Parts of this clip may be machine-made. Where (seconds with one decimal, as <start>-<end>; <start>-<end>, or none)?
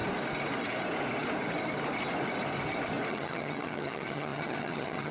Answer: 3.1-5.1